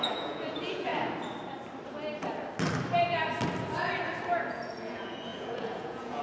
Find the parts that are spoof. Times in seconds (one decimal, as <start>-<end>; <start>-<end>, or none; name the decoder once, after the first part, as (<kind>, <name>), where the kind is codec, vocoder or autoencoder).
0.0-0.9 (vocoder, Vocos); 4.5-6.2